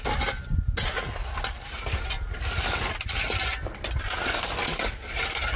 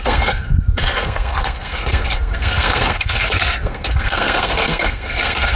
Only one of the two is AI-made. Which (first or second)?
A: second